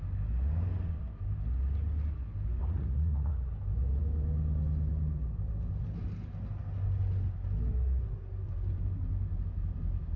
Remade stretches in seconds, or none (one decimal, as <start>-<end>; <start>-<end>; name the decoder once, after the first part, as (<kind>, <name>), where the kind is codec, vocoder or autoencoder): 2.6-3.4 (vocoder, Vocos)